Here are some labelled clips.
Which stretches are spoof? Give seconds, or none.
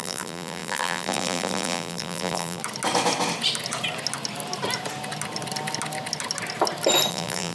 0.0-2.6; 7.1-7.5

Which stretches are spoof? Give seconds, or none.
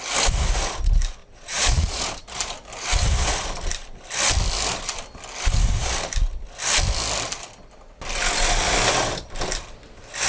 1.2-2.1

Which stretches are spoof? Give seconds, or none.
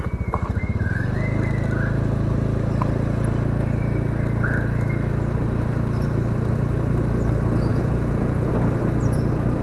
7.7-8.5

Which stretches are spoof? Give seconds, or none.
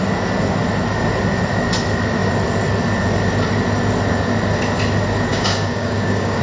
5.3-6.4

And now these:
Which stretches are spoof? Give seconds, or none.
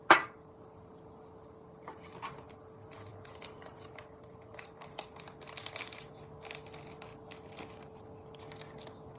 3.1-5.4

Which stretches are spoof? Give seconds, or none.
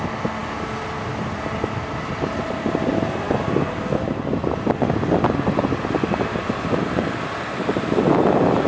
0.4-2.9; 6.4-8.7